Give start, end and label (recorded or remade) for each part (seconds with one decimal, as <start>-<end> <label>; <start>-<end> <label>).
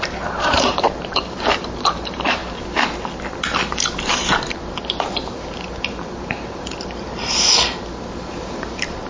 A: 0.0-2.4 remade; 2.4-4.7 recorded; 4.7-7.6 remade; 7.6-8.3 recorded; 8.3-9.1 remade